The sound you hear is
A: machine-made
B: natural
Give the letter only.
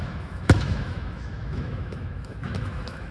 A